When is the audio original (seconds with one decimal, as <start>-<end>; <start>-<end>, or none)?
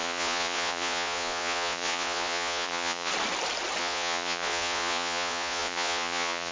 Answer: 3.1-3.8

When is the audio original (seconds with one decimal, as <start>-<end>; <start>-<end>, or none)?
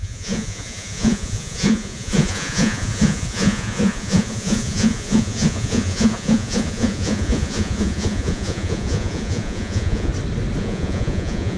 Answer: 10.1-10.6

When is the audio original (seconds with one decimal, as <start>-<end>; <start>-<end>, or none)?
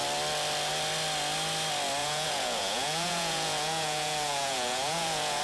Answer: 0.0-2.0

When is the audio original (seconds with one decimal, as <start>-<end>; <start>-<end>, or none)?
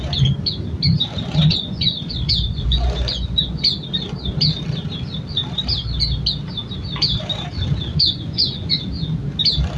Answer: 0.0-1.5; 3.6-7.9; 8.7-9.8